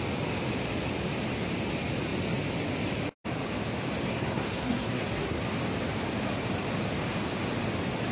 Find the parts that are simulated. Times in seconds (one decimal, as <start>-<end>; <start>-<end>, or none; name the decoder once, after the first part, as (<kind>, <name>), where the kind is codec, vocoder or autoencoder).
4.1-5.4 (codec, SNAC)